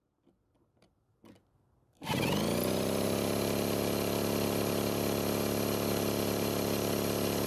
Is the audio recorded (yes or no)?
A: yes